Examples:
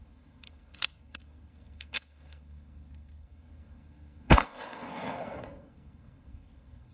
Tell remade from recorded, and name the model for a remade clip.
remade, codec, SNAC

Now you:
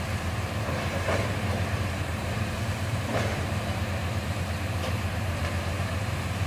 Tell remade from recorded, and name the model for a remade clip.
remade, vocoder, BigVGAN v2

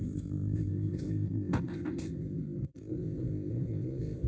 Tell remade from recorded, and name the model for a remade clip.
remade, codec, ZipCodec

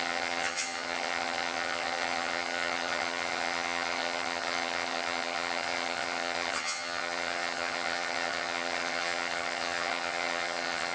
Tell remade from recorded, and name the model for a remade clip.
remade, vocoder, HiFi-GAN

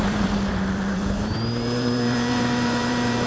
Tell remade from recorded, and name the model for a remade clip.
remade, vocoder, BigVGAN v2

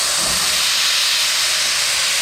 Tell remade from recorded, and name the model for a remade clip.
recorded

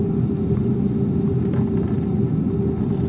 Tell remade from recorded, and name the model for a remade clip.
recorded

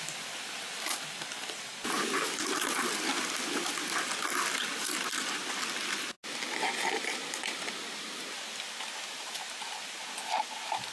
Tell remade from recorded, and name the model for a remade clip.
recorded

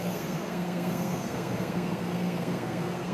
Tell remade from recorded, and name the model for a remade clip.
remade, codec, SNAC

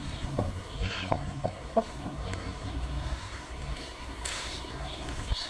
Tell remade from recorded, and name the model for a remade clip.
remade, codec, SNAC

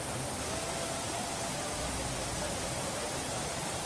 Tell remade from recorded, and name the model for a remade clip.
recorded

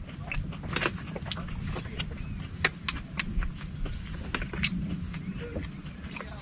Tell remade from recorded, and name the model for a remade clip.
recorded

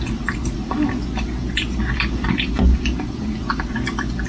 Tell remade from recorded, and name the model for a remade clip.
recorded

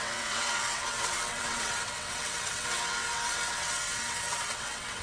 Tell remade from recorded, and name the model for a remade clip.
remade, vocoder, WaveNeXt